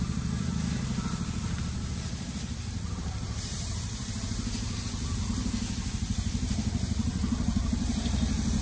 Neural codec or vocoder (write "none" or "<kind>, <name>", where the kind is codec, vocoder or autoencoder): vocoder, BigVGAN v2